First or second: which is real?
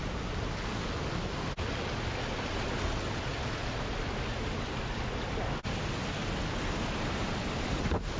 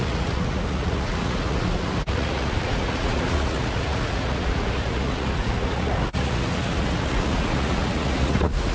first